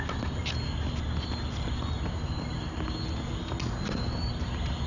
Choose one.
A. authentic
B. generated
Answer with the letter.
A